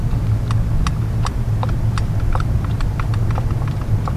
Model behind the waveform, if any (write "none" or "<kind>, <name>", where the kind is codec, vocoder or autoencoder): none